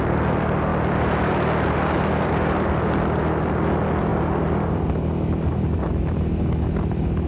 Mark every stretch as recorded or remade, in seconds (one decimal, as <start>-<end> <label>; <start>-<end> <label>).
0.0-7.3 recorded